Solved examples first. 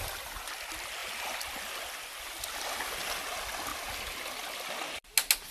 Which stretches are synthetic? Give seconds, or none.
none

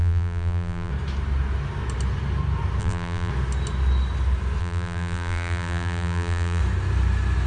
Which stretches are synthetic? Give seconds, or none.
0.0-0.9 (vocoder, BigVGAN v2); 2.8-3.3; 4.6-6.6

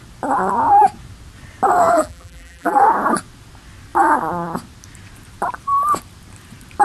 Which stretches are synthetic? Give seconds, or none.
1.9-2.8 (vocoder, BigVGAN v2)

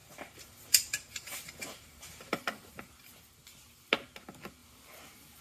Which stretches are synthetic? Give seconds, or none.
0.0-3.2 (vocoder, BigVGAN v2)

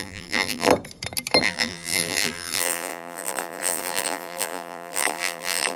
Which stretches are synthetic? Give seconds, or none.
0.0-0.7 (vocoder, BigVGAN v2); 1.4-5.8